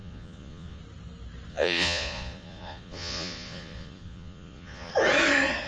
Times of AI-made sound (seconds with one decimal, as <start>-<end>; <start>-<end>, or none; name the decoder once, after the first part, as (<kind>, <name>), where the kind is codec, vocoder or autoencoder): 0.0-0.8 (vocoder, Vocos); 1.5-4.9

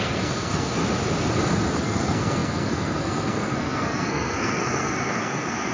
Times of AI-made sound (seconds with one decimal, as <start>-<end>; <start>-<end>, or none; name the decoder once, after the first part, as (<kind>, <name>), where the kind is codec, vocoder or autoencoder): 0.0-0.8 (codec, SNAC); 1.8-5.7

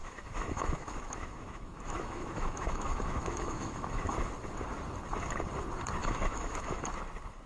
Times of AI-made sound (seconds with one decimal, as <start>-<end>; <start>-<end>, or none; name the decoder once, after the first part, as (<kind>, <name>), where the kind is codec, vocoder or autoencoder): 0.0-4.3 (autoencoder, DAC-VAE); 6.0-6.8

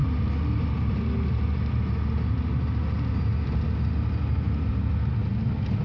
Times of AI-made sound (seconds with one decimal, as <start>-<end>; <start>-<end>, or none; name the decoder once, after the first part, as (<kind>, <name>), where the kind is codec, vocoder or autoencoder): none

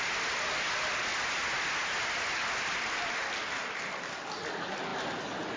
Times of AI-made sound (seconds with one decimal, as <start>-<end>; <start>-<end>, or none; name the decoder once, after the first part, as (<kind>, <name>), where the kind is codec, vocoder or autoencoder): none

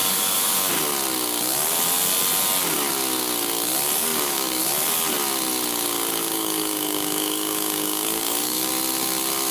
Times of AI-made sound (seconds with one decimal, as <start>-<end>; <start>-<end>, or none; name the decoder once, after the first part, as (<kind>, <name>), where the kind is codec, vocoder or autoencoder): 0.0-0.7 (codec, DAC); 4.0-4.6; 6.2-8.7

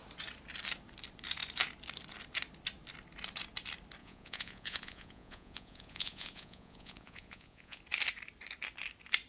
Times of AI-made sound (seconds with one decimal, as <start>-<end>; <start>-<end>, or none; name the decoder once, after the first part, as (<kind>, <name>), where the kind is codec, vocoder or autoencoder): 4.0-7.8 (vocoder, Vocos)